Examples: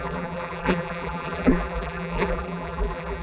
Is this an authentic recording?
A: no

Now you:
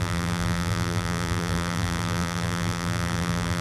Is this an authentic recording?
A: no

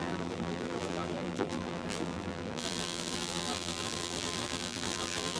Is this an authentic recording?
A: no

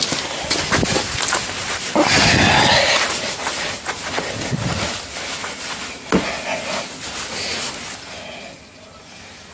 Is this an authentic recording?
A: yes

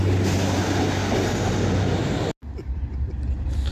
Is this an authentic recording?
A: yes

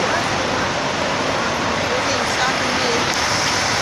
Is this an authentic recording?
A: no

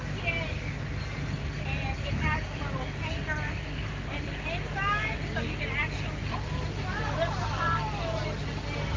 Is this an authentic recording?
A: yes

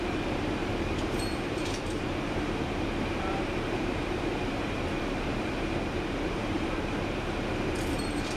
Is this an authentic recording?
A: no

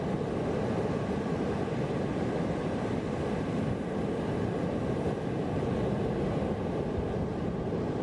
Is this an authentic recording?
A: yes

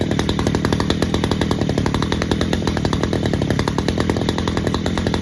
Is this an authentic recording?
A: yes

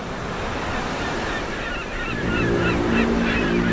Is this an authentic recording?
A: no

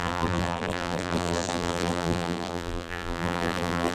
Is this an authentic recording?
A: no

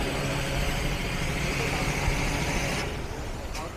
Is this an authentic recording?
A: no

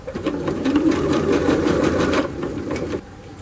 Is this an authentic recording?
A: no